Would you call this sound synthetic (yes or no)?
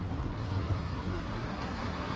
yes